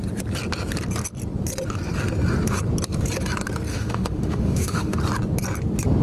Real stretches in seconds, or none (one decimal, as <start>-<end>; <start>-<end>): 0.0-3.7; 5.0-6.0

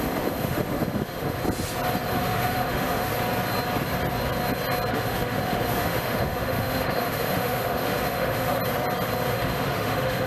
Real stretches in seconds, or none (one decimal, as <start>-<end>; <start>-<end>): 1.4-2.1; 3.1-4.9; 8.6-9.3

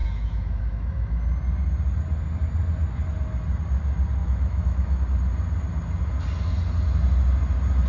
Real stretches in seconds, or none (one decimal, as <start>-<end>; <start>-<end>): 1.2-4.2; 5.0-7.9

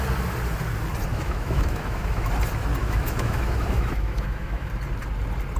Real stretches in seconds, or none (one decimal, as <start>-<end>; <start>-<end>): 0.0-1.1; 2.3-2.8; 4.7-5.6

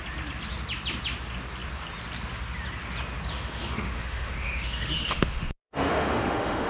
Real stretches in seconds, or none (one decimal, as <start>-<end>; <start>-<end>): 0.0-3.3

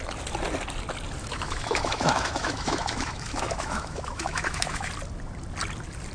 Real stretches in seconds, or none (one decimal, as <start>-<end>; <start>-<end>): 0.0-1.2; 4.9-6.1

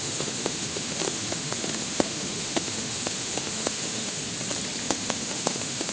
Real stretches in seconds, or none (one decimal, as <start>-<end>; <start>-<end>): 4.2-4.8

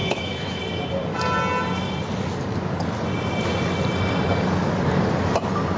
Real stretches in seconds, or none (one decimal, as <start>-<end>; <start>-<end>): 0.6-5.8